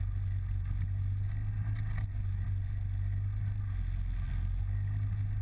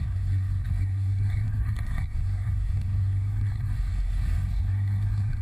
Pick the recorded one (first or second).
first